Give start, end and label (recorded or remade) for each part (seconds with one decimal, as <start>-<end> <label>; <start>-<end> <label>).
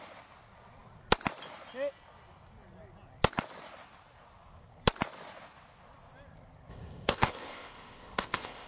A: 0.0-6.7 recorded; 6.7-8.7 remade